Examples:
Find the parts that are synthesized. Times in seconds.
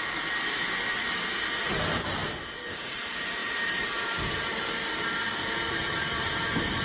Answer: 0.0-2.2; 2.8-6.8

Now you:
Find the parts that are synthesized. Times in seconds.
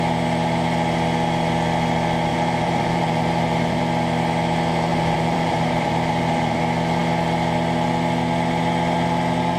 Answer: 2.3-3.8; 4.9-6.6